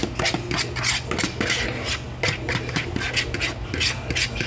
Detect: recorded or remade recorded